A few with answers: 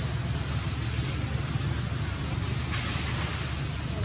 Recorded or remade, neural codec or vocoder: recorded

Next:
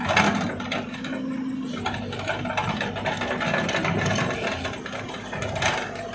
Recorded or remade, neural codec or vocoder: recorded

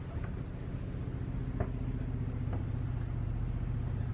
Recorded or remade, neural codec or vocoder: recorded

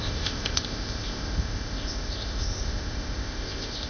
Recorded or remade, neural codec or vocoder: remade, codec, ZipCodec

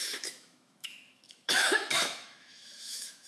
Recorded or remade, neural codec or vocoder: remade, autoencoder, DAC-VAE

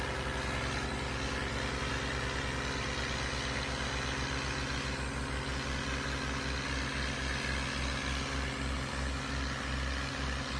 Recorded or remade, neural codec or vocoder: recorded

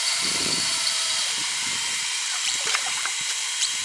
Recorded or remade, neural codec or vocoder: remade, vocoder, BigVGAN v2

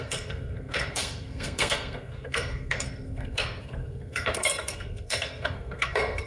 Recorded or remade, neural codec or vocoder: remade, codec, SNAC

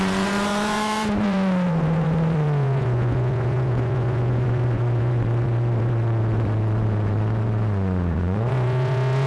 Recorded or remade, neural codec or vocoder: remade, vocoder, Vocos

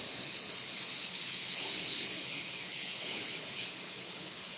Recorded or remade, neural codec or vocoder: remade, codec, HILCodec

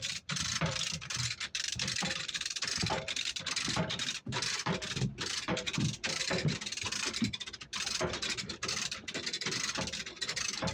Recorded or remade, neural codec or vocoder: remade, vocoder, BigVGAN v2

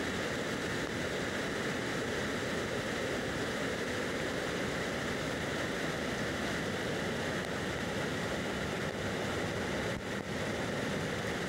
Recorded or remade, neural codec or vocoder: recorded